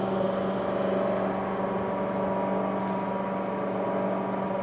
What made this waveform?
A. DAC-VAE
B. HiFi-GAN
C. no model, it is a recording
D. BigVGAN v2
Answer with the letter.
C